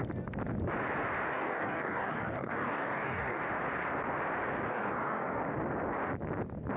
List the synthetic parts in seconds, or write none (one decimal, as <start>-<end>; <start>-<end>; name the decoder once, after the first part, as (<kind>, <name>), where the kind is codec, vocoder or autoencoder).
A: 1.3-3.4 (codec, DAC); 4.7-5.4